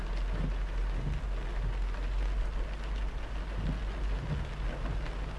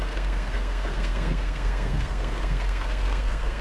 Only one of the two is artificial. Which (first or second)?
second